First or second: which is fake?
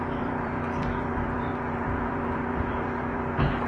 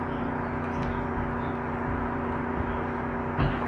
first